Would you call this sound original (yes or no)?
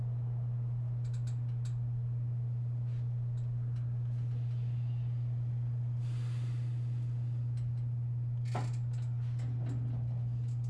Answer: yes